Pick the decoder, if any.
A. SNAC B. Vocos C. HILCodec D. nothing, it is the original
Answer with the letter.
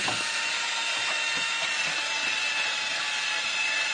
D